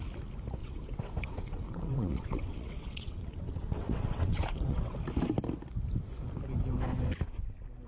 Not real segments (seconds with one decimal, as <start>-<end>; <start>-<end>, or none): 0.6-5.0